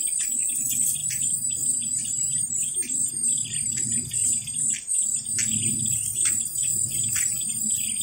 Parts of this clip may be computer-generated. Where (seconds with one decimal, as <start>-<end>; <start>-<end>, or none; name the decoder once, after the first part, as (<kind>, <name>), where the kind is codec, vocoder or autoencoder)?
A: 1.0-3.1 (vocoder, BigVGAN v2)